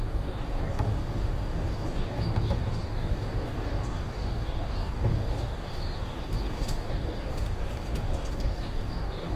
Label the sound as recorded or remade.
remade